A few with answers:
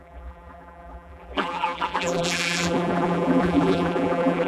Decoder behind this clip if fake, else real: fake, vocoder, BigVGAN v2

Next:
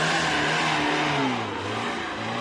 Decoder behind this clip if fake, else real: real